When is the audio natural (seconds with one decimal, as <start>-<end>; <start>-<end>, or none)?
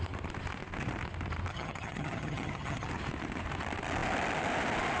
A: 0.0-1.5; 2.9-5.0